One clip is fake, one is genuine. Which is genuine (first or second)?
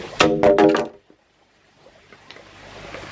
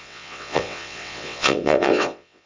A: first